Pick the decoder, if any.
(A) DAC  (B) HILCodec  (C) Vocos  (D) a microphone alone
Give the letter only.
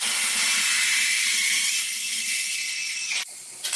D